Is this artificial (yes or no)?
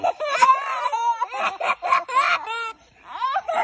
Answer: yes